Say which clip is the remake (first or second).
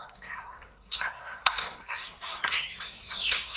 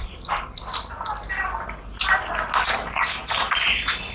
first